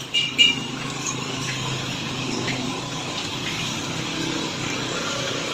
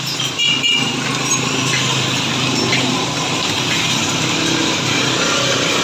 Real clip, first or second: second